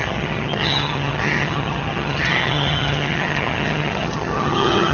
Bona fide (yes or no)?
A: no